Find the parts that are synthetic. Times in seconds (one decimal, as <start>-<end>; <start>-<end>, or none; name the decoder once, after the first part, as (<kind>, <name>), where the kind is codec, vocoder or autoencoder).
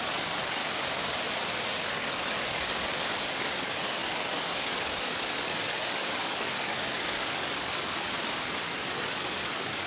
0.0-0.6 (codec, DAC); 1.7-9.9